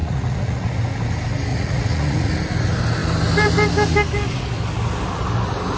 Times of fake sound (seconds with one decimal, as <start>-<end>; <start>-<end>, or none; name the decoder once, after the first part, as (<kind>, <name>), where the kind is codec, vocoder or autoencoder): 0.0-0.7 (vocoder, Vocos); 1.5-2.3